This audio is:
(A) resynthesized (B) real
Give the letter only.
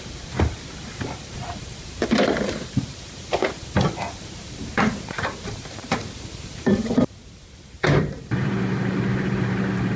A